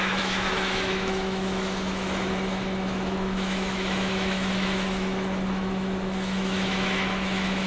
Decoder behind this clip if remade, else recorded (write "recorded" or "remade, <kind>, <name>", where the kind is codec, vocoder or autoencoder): remade, autoencoder, DAC-VAE